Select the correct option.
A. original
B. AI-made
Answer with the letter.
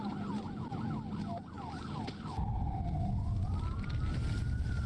A